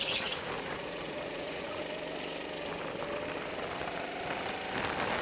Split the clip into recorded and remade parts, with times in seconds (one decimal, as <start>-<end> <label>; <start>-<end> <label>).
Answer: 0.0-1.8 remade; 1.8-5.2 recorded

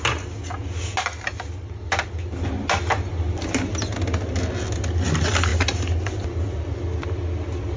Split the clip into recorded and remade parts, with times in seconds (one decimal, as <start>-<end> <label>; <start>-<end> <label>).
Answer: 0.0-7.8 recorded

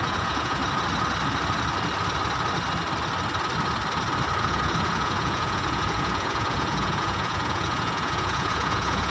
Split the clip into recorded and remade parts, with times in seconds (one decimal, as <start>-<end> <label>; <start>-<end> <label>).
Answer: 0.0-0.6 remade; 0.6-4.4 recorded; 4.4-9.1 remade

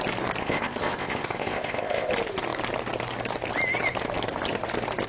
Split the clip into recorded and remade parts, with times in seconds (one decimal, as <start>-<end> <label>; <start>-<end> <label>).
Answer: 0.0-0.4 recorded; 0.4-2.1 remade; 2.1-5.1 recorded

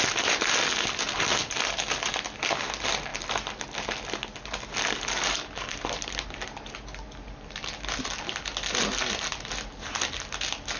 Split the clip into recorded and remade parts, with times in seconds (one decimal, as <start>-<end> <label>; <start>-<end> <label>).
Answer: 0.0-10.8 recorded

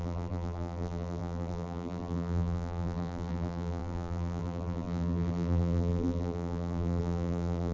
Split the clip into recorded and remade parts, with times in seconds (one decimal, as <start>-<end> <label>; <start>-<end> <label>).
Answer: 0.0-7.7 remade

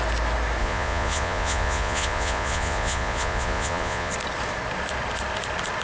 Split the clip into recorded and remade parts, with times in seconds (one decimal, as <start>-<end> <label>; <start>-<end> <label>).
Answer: 0.0-0.6 recorded; 0.6-4.1 remade; 4.1-5.8 recorded

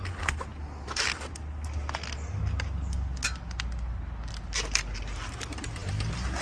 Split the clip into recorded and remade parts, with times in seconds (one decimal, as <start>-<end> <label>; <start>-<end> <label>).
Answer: 0.0-6.4 recorded